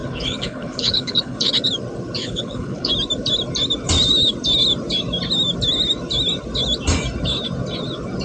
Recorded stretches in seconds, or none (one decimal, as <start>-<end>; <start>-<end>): 1.5-2.2; 2.9-8.2